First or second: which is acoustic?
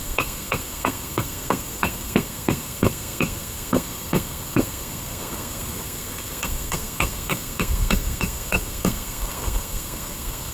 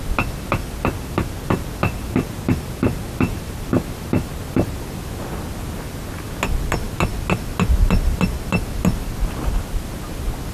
second